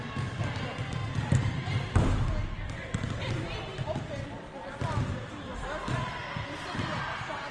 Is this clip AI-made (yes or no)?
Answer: no